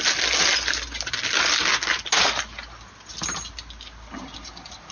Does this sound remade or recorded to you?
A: recorded